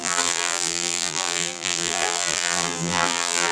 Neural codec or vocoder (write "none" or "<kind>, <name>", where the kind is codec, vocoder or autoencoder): vocoder, BigVGAN v2